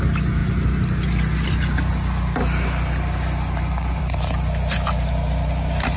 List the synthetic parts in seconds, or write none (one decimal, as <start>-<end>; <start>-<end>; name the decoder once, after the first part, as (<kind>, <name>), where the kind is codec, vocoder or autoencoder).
none